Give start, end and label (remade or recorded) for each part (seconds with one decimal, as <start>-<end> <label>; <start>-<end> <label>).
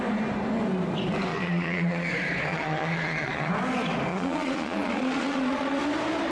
0.0-1.3 recorded; 1.3-2.1 remade; 2.1-2.5 recorded; 2.5-3.5 remade; 3.5-4.1 recorded; 4.1-5.8 remade; 5.8-6.3 recorded